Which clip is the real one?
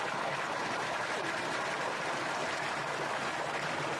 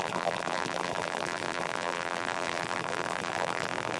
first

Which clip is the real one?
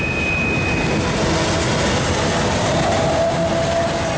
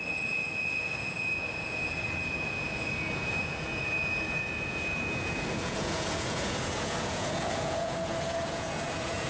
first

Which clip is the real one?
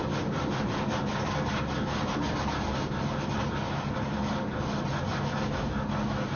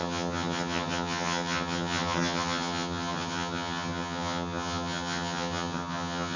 first